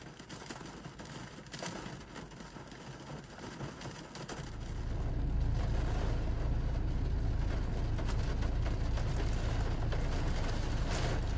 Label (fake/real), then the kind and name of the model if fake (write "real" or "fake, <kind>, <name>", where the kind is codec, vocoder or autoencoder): real